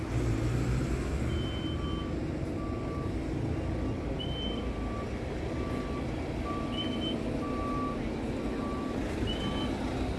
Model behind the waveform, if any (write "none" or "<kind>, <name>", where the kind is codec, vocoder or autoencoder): none